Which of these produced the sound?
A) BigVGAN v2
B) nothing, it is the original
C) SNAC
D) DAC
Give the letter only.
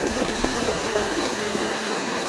C